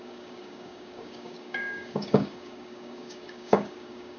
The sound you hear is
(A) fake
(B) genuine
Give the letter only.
A